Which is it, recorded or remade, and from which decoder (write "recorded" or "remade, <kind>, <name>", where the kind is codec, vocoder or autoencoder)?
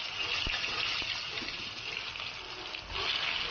recorded